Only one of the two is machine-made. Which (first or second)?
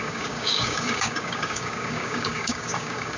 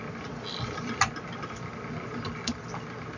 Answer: first